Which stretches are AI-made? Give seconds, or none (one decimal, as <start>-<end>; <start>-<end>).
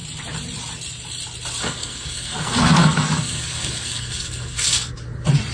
1.6-4.9